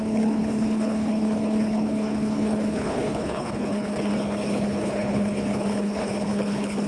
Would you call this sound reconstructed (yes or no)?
yes